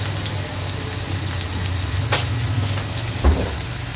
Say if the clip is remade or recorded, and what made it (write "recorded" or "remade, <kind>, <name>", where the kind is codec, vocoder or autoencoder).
recorded